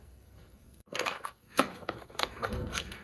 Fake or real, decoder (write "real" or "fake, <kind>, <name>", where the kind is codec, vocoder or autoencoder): fake, codec, SNAC